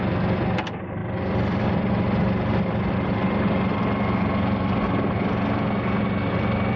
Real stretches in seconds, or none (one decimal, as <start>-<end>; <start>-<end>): 0.0-1.0; 3.8-6.8